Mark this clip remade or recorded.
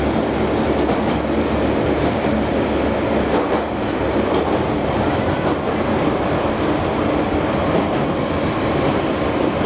recorded